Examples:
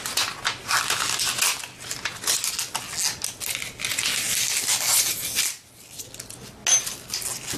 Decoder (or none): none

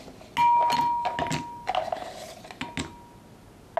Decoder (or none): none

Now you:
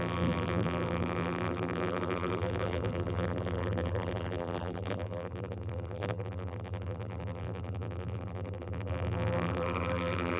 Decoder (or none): vocoder, BigVGAN v2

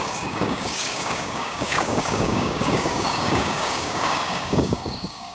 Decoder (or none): codec, DAC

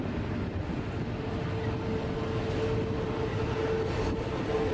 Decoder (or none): none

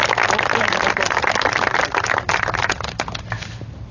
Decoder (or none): none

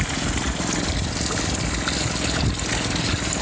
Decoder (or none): none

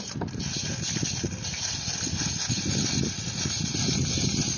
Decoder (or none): none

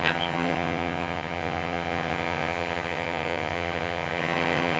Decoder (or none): vocoder, HiFi-GAN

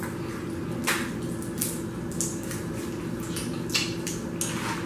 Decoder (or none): none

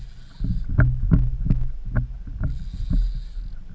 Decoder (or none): none